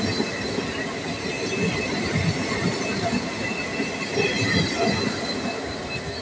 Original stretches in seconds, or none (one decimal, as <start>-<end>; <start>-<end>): 0.0-6.2